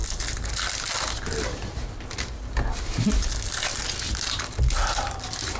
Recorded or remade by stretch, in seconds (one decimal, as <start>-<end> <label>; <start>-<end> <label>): 0.0-5.6 recorded